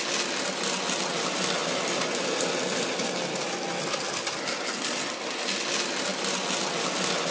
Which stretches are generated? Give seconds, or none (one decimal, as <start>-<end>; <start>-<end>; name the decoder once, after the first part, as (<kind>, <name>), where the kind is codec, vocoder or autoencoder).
none